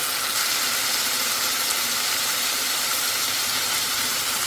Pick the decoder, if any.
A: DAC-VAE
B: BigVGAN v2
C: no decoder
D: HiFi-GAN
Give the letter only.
B